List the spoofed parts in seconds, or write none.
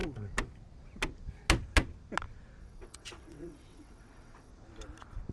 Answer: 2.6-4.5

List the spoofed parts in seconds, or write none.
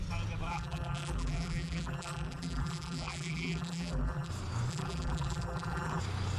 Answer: 0.5-4.3; 4.7-6.0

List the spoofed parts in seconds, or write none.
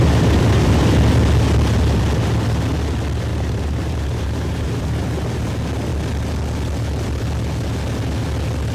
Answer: 3.3-5.4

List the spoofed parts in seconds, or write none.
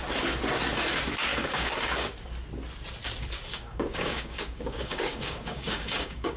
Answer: 1.3-2.1; 3.5-6.4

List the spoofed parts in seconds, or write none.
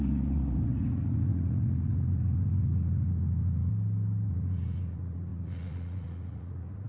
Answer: 0.0-3.7; 4.3-6.9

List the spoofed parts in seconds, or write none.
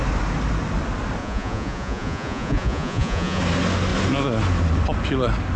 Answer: 1.2-3.4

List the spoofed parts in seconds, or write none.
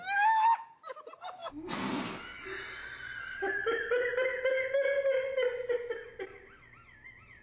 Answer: none